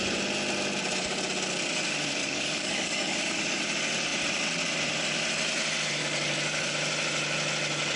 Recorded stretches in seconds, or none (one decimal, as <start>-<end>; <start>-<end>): 0.0-2.2; 3.6-6.0; 6.7-8.0